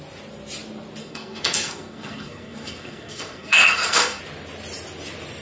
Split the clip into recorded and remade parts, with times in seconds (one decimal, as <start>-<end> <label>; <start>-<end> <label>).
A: 0.0-1.0 recorded; 1.0-4.2 remade; 4.2-5.4 recorded